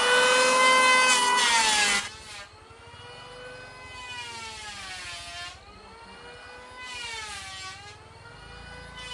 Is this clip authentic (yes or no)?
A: yes